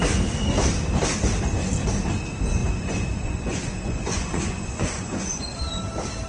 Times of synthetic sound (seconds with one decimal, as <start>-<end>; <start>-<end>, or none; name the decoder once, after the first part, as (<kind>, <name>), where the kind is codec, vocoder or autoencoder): 2.6-5.6 (vocoder, Vocos)